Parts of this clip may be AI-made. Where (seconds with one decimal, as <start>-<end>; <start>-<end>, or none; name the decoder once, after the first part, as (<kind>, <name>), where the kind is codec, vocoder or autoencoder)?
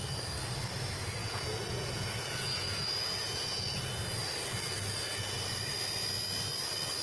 1.2-3.8 (vocoder, Vocos)